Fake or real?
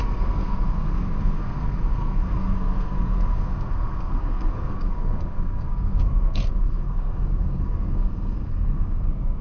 fake